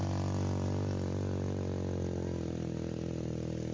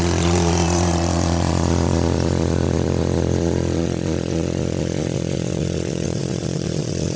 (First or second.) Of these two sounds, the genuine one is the first